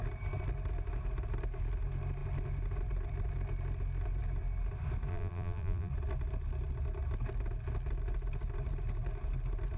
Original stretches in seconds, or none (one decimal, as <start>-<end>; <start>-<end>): 0.0-5.1; 5.9-9.8